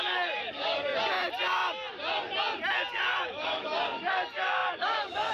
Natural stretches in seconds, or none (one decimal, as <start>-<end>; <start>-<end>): 0.9-3.2